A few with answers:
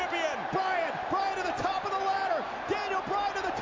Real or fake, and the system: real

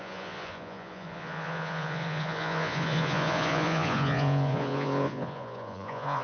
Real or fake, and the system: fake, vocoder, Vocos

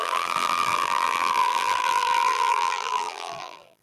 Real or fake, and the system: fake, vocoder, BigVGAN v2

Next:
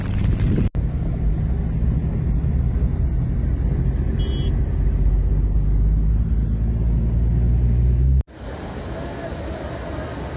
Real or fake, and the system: real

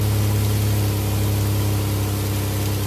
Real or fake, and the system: real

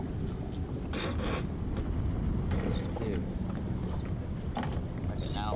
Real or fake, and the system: real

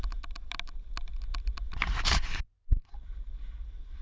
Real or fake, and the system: real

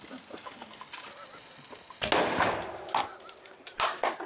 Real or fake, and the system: real